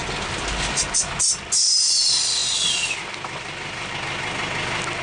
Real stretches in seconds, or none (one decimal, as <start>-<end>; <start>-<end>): 0.0-2.4; 3.9-5.0